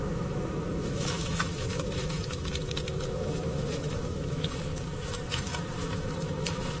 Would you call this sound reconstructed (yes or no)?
yes